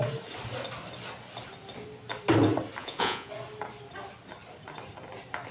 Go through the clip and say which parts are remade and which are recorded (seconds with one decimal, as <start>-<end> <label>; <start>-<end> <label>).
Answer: 0.0-2.8 recorded; 2.8-3.3 remade; 3.3-5.5 recorded